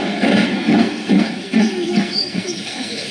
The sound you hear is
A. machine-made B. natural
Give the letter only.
A